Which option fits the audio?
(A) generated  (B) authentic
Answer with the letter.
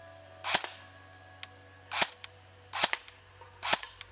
B